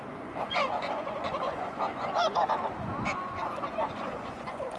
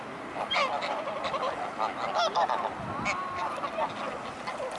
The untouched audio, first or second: second